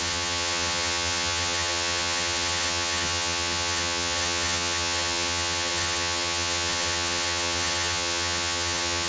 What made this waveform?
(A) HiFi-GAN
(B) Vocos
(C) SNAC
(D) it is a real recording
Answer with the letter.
A